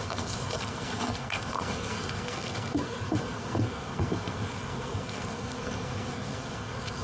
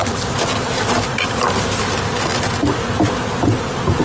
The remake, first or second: first